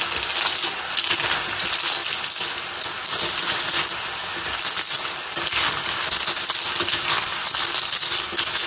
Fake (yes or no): no